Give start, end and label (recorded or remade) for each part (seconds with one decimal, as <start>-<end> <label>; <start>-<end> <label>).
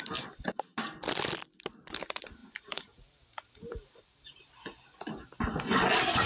0.0-2.4 recorded; 2.4-4.4 remade; 4.4-6.3 recorded